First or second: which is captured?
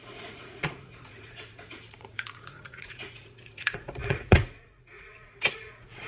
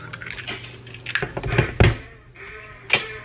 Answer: second